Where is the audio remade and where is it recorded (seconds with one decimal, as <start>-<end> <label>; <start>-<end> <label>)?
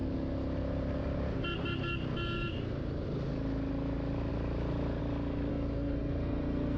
0.0-5.5 recorded; 5.5-6.8 remade